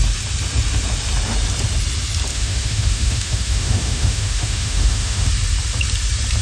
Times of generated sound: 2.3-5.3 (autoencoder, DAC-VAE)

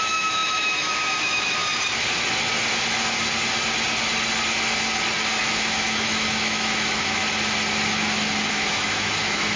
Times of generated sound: 0.0-1.6 (autoencoder, DAC-VAE); 5.4-7.2; 8.5-9.6

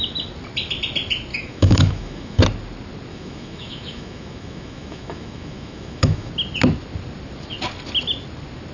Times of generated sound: 1.3-2.4 (autoencoder, DAC-VAE); 3.1-6.3

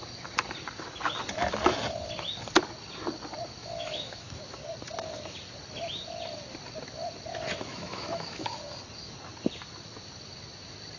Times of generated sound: 3.6-4.3 (autoencoder, DAC-VAE); 7.7-8.5